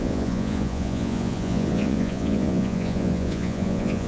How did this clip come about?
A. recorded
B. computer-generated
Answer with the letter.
B